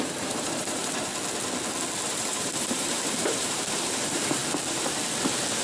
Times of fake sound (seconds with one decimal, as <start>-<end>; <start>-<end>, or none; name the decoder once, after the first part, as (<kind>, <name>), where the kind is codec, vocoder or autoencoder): 0.0-1.1 (vocoder, BigVGAN v2); 2.0-4.4